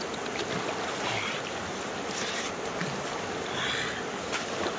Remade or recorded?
recorded